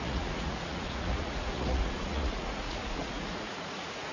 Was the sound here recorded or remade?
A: remade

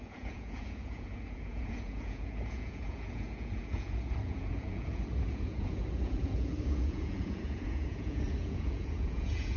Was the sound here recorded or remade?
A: remade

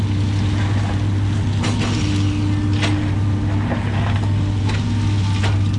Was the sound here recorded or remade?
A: recorded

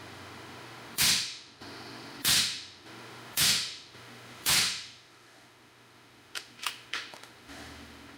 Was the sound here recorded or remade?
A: remade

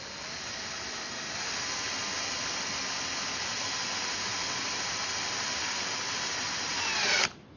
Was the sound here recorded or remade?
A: recorded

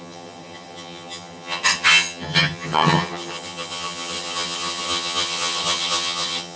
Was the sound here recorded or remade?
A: remade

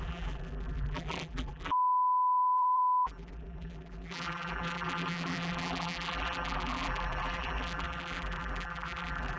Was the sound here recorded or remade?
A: remade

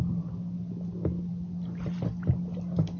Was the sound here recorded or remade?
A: recorded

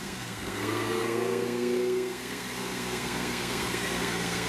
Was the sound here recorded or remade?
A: remade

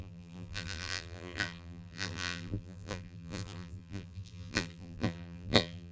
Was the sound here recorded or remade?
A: remade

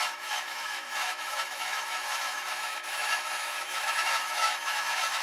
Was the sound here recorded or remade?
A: remade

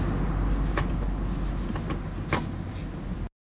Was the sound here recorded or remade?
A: recorded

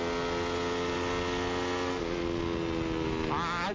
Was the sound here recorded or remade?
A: recorded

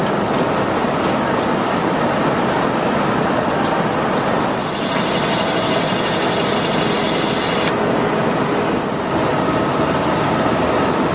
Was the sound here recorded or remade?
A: recorded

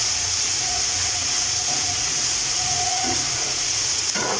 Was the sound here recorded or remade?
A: remade